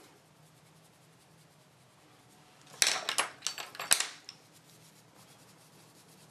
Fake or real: real